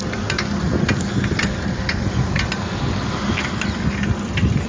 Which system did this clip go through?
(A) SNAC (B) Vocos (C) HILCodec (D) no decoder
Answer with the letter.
D